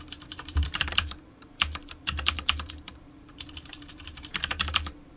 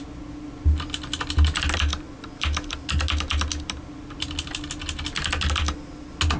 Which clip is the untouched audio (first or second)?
second